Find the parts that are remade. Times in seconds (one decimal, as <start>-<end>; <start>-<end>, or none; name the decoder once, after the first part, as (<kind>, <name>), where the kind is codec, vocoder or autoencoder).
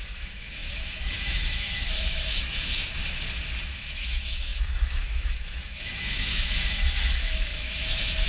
0.0-3.0 (autoencoder, DAC-VAE); 3.9-8.3